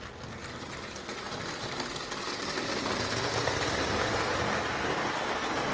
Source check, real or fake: real